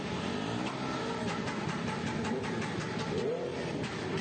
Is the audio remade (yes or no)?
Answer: no